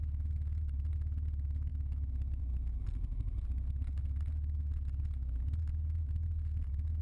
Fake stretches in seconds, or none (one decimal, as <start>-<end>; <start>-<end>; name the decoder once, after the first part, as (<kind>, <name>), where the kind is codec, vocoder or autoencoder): none